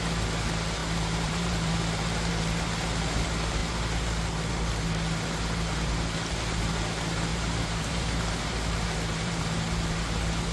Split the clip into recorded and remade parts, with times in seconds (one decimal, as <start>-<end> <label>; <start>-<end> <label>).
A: 0.0-0.8 recorded; 0.8-2.3 remade; 2.3-7.3 recorded; 7.3-9.4 remade; 9.4-10.5 recorded